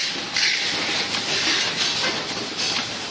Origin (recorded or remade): recorded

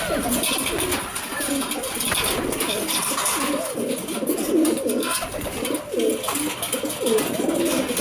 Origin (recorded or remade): recorded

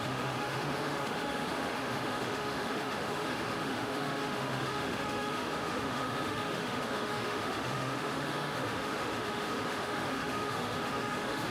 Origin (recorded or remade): remade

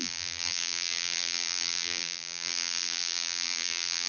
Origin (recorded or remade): remade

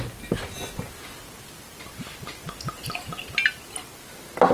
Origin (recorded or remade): recorded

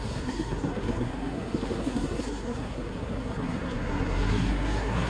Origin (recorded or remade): remade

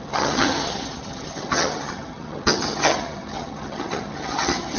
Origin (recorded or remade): remade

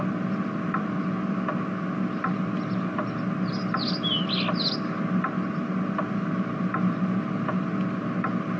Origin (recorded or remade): recorded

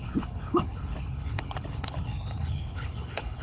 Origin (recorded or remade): remade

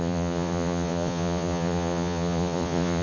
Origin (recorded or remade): remade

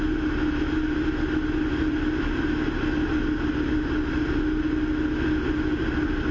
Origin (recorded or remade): recorded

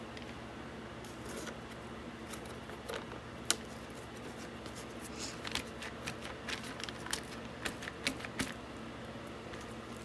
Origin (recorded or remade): recorded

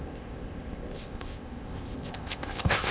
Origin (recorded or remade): remade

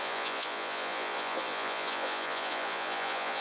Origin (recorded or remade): remade